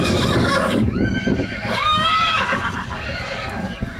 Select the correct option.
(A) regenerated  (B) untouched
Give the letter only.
A